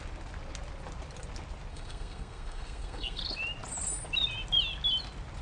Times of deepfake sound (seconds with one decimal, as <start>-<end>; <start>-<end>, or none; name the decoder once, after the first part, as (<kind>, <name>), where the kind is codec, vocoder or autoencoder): 1.7-3.2 (codec, SNAC)